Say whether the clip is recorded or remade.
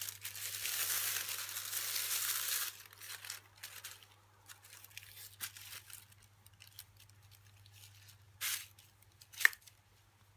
recorded